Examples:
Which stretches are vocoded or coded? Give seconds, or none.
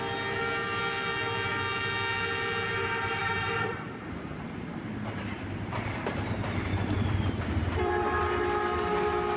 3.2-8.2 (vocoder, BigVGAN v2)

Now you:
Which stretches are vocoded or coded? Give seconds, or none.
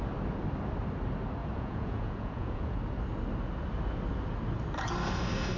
1.4-2.8 (vocoder, Vocos)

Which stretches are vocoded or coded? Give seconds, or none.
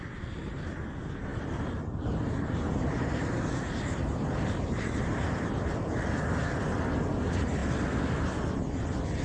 1.3-5.5 (vocoder, BigVGAN v2)